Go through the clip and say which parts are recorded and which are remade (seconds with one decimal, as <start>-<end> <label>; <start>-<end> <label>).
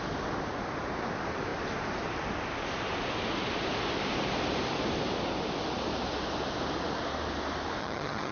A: 0.0-7.8 recorded; 7.8-8.3 remade